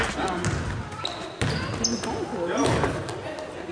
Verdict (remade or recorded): recorded